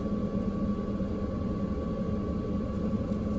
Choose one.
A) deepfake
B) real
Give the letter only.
B